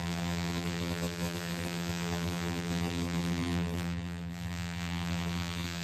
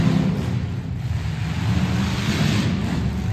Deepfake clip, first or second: first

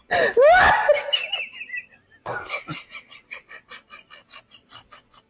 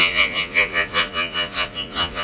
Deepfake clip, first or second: second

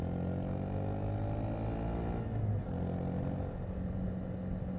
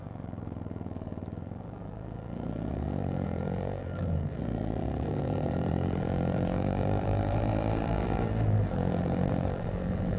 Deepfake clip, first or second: second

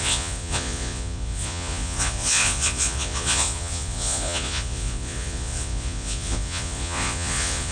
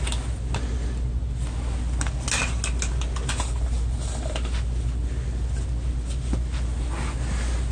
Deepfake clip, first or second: first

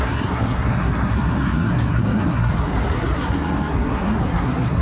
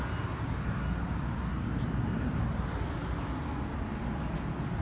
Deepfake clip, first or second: first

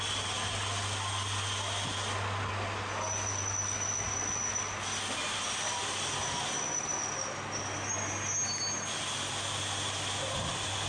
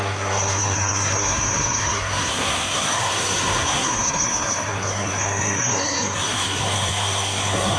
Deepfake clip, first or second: second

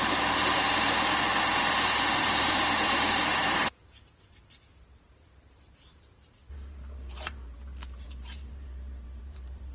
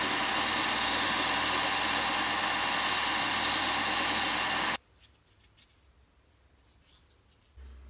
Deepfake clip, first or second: first